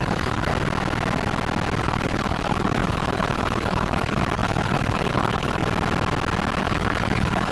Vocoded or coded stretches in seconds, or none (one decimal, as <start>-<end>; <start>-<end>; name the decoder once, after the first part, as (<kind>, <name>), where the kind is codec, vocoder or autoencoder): 0.0-0.5 (codec, HILCodec); 1.8-5.6; 6.6-7.5